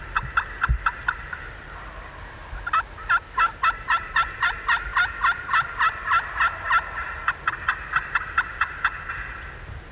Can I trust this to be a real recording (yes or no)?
yes